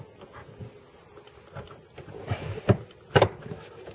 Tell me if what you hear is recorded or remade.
recorded